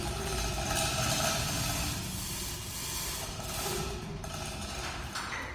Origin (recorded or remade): recorded